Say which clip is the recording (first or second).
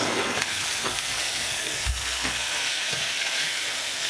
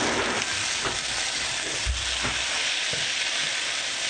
second